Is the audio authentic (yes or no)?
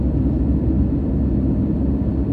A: yes